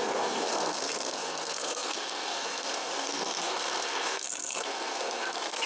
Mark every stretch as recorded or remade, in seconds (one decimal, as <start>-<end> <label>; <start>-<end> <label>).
0.0-5.7 remade